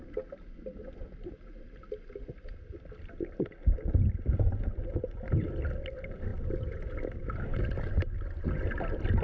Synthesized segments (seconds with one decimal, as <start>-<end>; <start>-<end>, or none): none